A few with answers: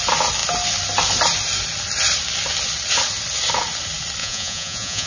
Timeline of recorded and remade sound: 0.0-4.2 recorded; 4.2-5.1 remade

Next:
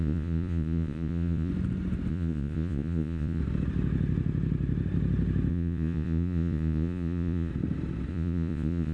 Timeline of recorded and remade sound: 0.0-1.5 remade; 1.5-2.1 recorded; 2.1-3.4 remade; 3.4-5.5 recorded; 5.5-7.5 remade; 7.5-8.1 recorded; 8.1-8.9 remade